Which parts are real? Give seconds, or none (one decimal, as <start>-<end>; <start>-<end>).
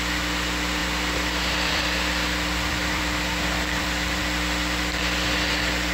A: 0.0-0.8; 4.2-5.9